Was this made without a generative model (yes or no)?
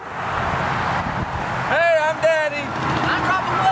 yes